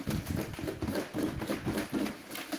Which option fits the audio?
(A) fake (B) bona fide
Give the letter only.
B